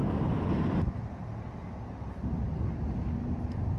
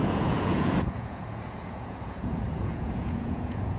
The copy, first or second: second